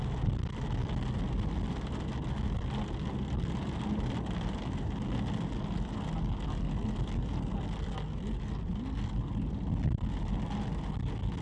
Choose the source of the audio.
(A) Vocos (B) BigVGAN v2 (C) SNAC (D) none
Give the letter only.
D